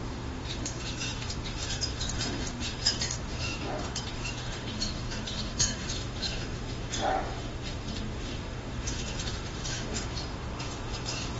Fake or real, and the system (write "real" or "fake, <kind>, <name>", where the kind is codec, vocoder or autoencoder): fake, autoencoder, DAC-VAE